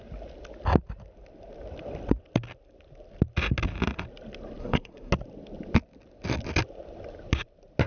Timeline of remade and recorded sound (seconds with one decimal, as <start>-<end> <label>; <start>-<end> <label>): 0.0-4.6 recorded; 4.6-5.1 remade; 5.1-7.9 recorded